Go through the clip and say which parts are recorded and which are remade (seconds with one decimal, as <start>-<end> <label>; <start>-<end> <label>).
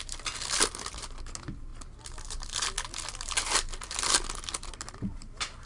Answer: 0.0-5.7 recorded